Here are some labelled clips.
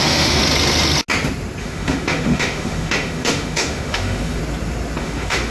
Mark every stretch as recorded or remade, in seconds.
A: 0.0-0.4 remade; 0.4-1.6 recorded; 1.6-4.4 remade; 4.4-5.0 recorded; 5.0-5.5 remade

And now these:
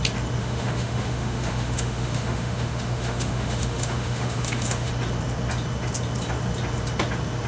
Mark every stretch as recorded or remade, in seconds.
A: 0.0-0.4 recorded; 0.4-4.9 remade; 4.9-7.5 recorded

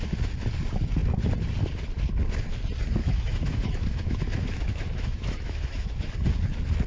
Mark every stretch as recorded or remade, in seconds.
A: 0.0-3.0 recorded; 3.0-6.1 remade; 6.1-6.9 recorded

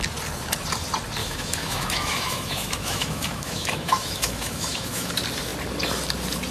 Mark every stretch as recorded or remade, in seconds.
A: 0.0-1.2 recorded; 1.2-5.1 remade; 5.1-6.5 recorded

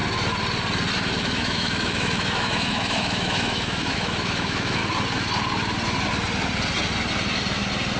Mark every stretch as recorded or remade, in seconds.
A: 0.0-1.2 recorded; 1.2-4.8 remade; 4.8-8.0 recorded

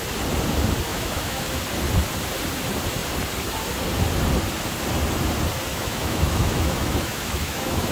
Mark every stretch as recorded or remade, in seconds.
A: 0.0-0.9 recorded; 0.9-1.6 remade; 1.6-5.7 recorded; 5.7-7.9 remade